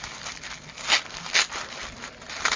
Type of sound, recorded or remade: remade